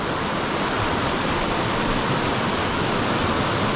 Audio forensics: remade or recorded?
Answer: recorded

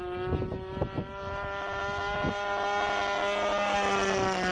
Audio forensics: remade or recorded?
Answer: recorded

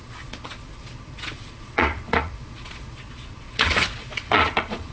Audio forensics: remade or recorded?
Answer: remade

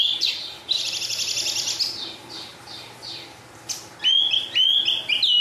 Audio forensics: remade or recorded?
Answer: recorded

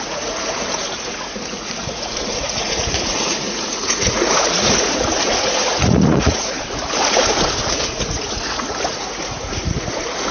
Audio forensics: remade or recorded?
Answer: remade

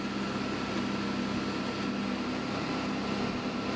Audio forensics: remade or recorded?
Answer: recorded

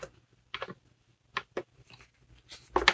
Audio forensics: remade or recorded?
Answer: recorded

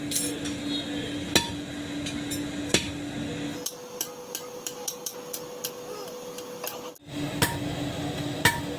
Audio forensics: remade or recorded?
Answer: recorded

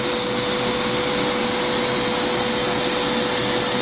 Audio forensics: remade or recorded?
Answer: recorded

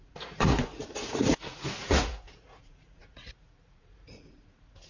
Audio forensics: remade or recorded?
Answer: remade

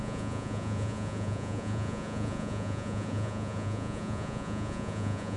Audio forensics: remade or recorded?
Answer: remade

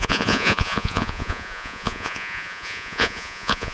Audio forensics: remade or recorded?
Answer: remade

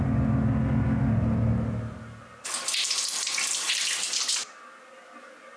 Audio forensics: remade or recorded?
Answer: recorded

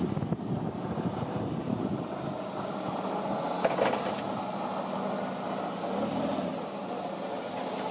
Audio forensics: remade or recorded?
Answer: recorded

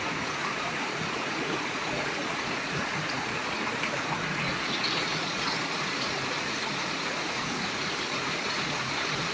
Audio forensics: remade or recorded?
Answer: remade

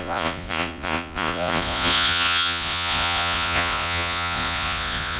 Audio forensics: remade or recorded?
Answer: remade